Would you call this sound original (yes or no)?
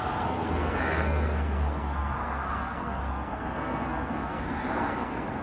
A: no